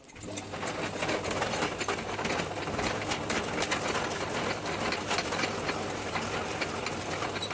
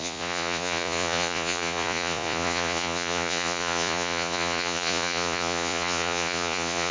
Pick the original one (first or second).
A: first